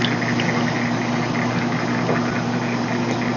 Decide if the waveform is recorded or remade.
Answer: recorded